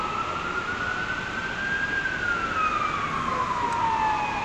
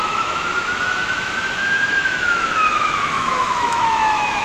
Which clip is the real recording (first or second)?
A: first